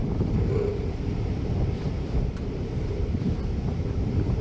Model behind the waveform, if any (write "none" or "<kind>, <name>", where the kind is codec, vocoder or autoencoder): vocoder, BigVGAN v2